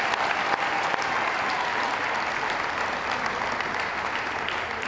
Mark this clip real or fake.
real